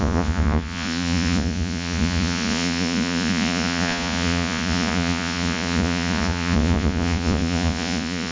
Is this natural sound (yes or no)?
no